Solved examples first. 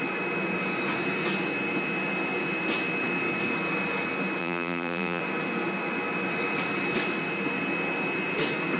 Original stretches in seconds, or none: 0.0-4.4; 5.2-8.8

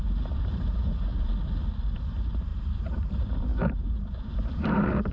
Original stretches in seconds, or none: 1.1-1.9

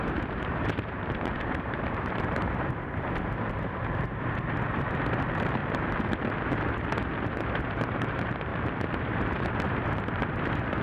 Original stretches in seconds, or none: 5.6-7.3; 8.5-9.0

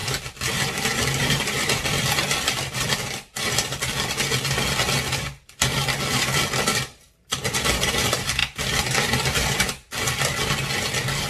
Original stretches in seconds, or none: 4.2-8.4; 9.7-11.3

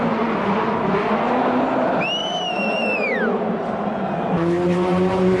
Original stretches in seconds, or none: 0.0-2.2

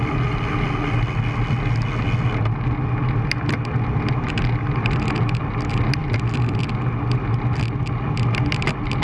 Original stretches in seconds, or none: 0.0-9.0